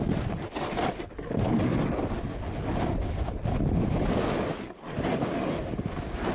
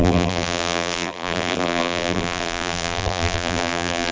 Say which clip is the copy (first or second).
second